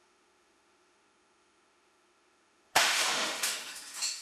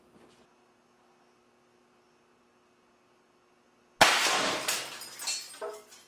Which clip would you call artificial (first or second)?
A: first